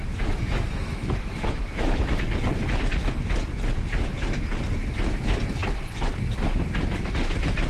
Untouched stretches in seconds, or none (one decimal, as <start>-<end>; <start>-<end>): 2.1-7.7